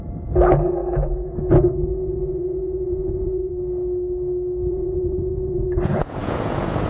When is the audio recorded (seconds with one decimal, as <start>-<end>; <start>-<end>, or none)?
3.5-4.7